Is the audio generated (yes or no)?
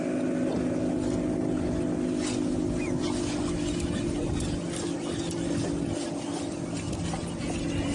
no